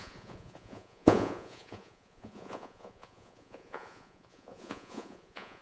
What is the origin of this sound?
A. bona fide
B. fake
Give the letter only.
B